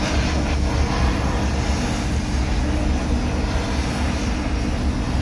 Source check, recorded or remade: recorded